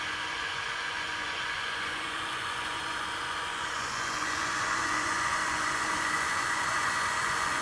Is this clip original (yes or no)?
no